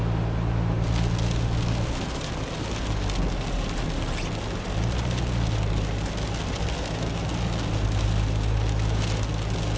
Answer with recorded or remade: recorded